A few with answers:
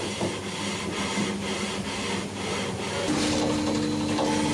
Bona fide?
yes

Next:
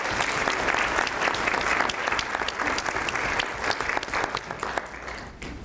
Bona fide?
yes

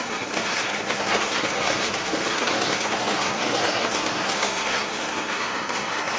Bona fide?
no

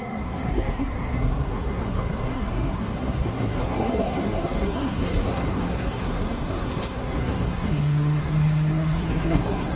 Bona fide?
no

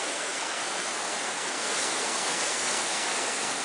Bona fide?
no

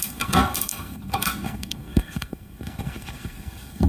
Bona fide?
no